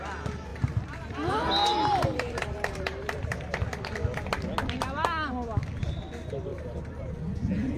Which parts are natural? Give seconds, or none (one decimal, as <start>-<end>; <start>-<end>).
0.0-0.5; 3.6-6.5; 7.1-7.8

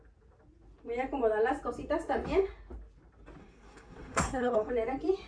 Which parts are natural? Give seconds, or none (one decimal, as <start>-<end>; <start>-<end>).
0.0-3.4; 4.7-5.3

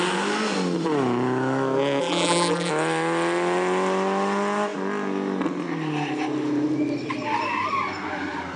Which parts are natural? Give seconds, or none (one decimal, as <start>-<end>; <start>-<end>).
0.0-2.0; 2.7-8.6

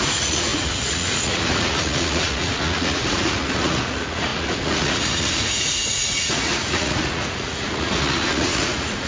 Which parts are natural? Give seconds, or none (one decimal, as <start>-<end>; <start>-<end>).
none

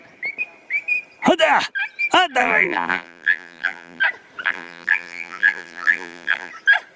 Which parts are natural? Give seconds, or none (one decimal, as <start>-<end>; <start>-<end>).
0.0-2.4; 4.0-4.4; 6.5-7.0

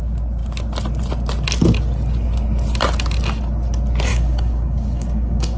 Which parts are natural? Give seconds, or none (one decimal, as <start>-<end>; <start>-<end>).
0.0-4.1

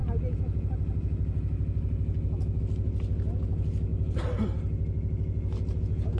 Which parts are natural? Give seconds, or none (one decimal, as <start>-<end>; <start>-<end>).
0.0-6.2